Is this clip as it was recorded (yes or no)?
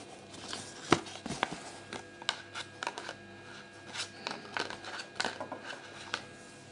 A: yes